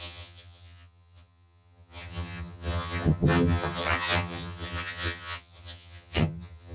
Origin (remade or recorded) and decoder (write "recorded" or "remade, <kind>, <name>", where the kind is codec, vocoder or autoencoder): remade, vocoder, HiFi-GAN